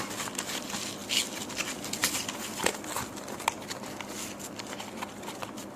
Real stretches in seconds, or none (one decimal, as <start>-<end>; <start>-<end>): 0.0-5.8